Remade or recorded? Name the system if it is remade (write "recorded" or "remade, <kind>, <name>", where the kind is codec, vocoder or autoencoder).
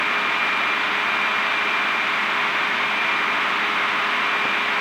recorded